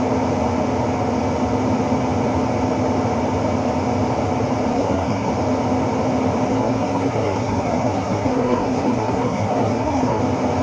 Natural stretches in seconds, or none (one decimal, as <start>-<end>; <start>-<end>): 0.0-4.7; 5.3-6.5; 10.2-10.6